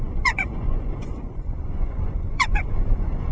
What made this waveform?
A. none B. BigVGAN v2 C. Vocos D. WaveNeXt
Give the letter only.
C